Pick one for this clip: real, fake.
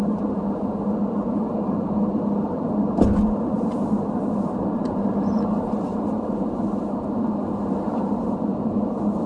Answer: fake